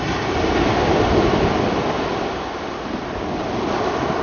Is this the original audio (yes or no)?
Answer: yes